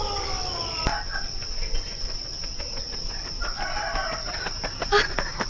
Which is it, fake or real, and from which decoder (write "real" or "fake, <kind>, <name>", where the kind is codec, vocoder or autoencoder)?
real